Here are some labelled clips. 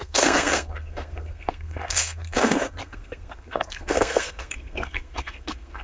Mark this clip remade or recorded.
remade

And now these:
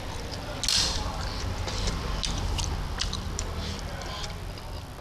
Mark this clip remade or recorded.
recorded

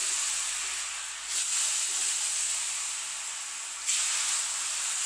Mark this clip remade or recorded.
recorded